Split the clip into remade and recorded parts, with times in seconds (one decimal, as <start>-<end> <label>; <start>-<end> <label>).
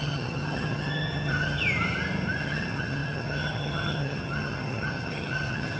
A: 0.0-1.6 remade; 1.6-2.4 recorded; 2.4-5.8 remade